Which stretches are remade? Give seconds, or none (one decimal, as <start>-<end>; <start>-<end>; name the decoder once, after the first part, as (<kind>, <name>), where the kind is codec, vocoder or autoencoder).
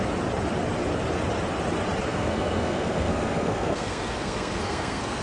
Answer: 2.1-5.2 (codec, SNAC)